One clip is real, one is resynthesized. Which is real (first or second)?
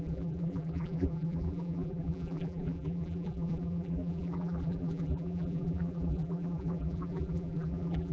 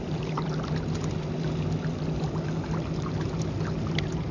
second